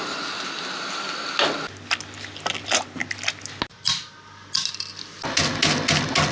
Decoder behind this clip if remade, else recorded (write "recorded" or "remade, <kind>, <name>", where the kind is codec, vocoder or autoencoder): recorded